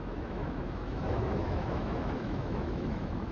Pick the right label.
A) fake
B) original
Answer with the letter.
A